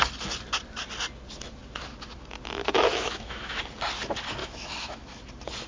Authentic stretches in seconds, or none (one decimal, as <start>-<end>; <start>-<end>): 0.0-2.6; 3.6-4.4; 5.2-5.7